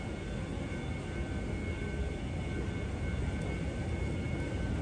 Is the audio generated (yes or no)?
no